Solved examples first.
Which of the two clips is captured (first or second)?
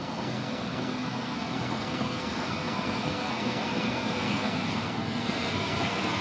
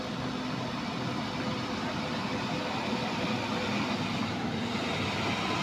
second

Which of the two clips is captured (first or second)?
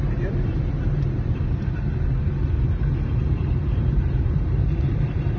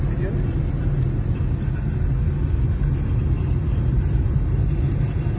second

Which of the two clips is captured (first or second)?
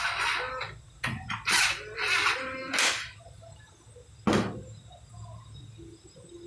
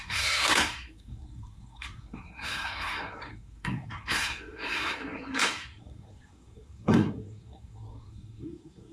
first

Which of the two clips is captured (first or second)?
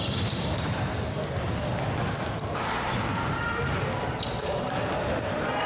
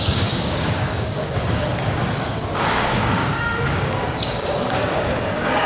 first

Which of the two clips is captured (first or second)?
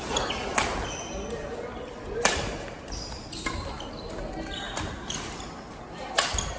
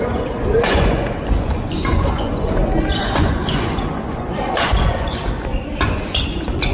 first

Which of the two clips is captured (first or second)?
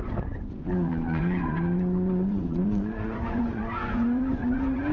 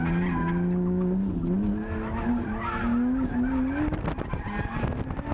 second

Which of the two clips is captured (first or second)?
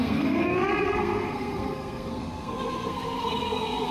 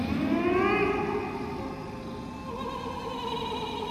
second